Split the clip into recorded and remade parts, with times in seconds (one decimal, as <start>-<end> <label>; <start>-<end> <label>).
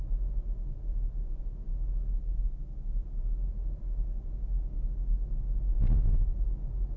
0.0-7.0 recorded